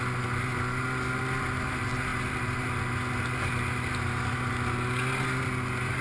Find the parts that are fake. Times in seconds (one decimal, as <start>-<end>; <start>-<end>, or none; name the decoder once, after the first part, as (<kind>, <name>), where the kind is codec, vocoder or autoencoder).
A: none